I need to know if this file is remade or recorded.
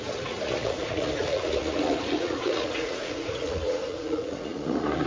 remade